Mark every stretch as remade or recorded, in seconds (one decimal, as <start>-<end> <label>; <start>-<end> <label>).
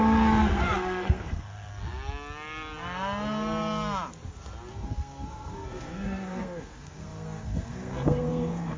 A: 0.0-1.7 remade; 1.7-4.7 recorded; 4.7-8.8 remade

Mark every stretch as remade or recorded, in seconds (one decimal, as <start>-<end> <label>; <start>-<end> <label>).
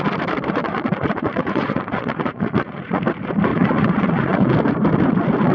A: 0.0-0.6 recorded; 0.6-3.0 remade; 3.0-3.5 recorded; 3.5-4.5 remade; 4.5-5.5 recorded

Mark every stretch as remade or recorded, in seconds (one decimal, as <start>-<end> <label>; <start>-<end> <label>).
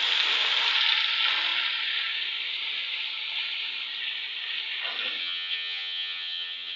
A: 0.0-5.2 recorded; 5.2-6.8 remade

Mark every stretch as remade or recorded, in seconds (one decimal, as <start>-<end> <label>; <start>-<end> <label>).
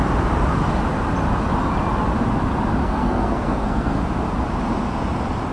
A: 0.0-2.8 recorded; 2.8-4.0 remade; 4.0-5.5 recorded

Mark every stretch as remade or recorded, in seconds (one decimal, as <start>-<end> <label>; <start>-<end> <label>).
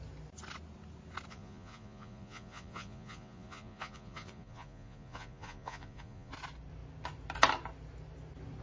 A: 0.0-1.3 recorded; 1.3-6.3 remade; 6.3-8.6 recorded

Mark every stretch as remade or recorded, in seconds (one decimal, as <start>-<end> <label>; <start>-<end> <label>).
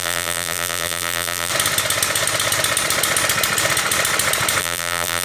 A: 0.0-1.5 remade; 1.5-4.6 recorded; 4.6-5.2 remade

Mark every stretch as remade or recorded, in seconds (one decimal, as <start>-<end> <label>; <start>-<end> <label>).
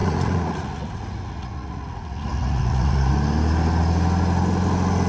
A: 0.0-3.1 remade; 3.1-5.1 recorded